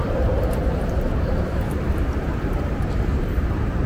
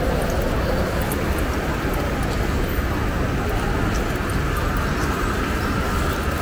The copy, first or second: first